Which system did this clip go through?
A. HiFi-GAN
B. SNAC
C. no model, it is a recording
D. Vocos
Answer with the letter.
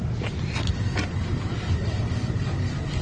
C